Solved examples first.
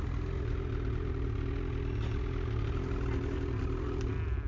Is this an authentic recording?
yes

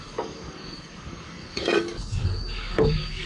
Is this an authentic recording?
no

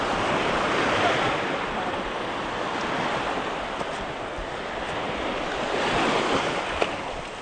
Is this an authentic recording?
yes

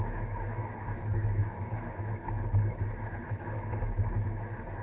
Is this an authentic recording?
no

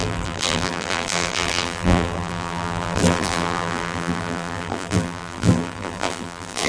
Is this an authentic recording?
no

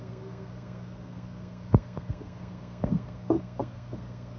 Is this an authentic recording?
no